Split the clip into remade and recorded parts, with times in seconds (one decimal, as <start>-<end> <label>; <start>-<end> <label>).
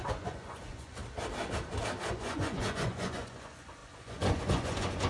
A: 0.0-1.0 remade; 1.0-2.1 recorded; 2.1-5.1 remade